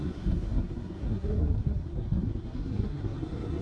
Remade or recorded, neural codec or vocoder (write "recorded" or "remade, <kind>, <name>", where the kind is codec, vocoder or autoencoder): remade, codec, SNAC